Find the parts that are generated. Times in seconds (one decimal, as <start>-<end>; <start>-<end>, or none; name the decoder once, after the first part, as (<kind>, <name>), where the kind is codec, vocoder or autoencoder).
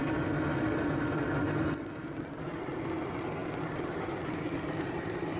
none